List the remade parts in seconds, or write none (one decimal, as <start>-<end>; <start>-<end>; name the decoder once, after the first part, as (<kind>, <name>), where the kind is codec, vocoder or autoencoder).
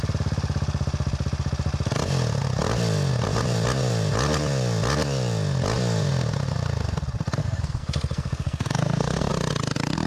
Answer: 7.4-9.3 (codec, SNAC)